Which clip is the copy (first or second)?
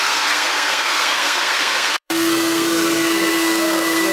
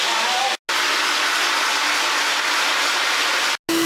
first